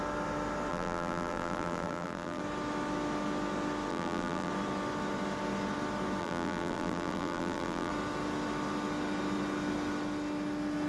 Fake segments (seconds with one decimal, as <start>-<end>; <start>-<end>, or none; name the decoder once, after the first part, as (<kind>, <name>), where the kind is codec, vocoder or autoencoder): 0.7-2.4 (vocoder, BigVGAN v2); 3.9-4.5; 6.2-7.9